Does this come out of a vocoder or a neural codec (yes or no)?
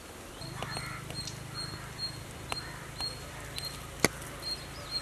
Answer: no